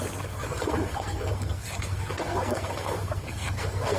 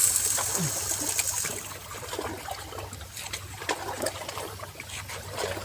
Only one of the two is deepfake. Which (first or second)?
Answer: first